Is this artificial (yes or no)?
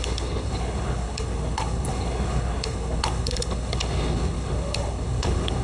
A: yes